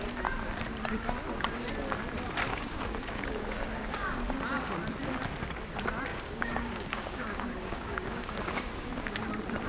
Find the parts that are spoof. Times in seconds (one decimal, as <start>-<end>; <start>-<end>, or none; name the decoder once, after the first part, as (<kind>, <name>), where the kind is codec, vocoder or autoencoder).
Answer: 2.5-4.2 (codec, DAC); 6.1-9.2